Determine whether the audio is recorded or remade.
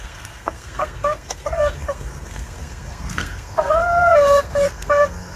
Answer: remade